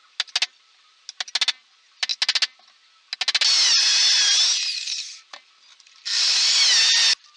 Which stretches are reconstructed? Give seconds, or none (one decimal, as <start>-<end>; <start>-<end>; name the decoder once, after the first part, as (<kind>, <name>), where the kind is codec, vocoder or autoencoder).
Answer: none